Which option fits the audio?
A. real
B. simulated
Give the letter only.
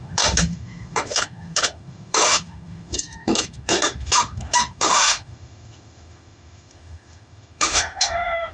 B